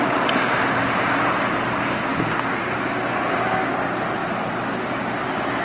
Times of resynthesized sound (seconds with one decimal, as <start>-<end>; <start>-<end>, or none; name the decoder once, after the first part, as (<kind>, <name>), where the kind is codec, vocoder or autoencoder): none